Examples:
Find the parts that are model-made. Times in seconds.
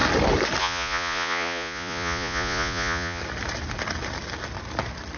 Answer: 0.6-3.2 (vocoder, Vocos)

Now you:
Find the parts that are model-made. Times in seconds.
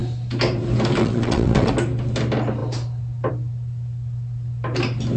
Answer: 1.0-1.7 (vocoder, WaveNeXt)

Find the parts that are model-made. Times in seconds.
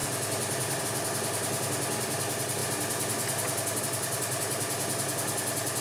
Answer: none